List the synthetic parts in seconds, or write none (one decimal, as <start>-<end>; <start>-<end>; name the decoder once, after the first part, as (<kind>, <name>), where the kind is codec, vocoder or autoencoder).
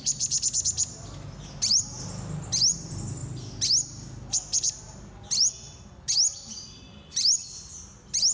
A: none